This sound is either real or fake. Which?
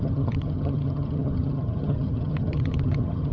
fake